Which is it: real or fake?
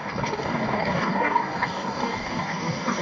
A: fake